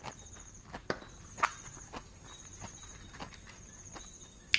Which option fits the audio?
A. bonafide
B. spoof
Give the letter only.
A